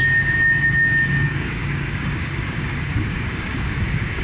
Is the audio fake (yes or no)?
yes